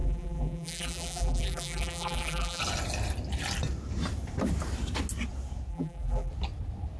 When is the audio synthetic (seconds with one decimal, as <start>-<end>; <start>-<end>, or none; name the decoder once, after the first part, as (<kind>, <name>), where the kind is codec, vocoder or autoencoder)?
0.0-2.6 (vocoder, BigVGAN v2); 5.7-6.3